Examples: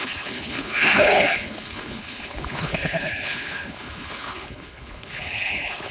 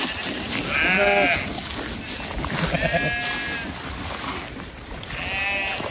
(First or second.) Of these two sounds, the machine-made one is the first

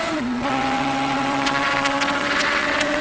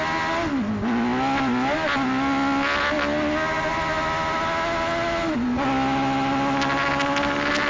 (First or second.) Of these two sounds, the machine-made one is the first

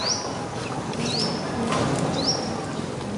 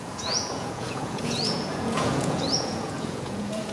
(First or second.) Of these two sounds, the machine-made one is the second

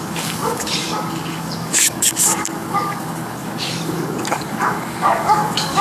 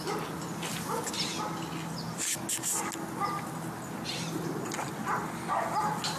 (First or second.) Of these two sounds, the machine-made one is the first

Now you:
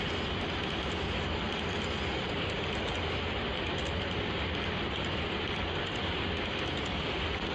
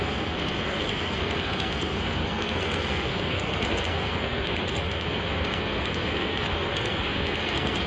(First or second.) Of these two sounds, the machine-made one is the second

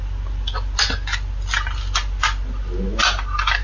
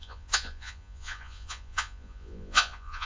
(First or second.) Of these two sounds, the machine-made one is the second